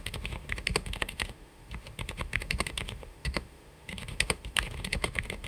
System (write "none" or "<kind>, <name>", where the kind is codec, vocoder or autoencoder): autoencoder, DAC-VAE